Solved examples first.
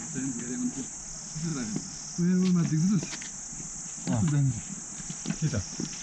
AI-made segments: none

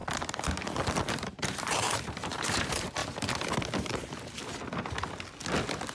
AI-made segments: 1.1-3.0 (vocoder, BigVGAN v2)